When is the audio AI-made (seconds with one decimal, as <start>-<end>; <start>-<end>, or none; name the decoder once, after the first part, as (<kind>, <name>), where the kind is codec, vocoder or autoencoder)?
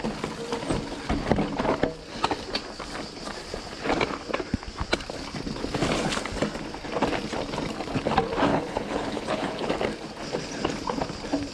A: 8.5-9.7 (codec, HILCodec)